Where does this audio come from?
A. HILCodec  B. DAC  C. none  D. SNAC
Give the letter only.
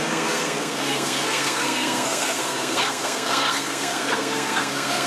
D